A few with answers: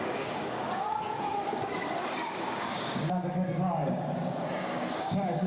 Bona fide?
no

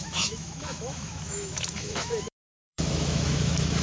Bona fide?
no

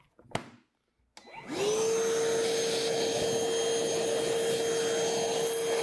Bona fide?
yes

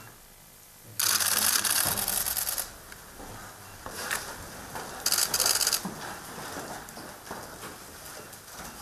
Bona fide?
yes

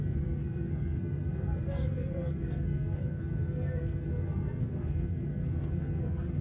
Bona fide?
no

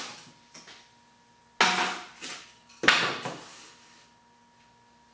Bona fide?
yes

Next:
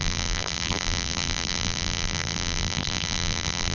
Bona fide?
no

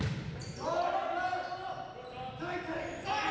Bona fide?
yes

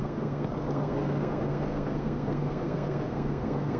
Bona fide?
no